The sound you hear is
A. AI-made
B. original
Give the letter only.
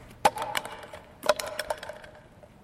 A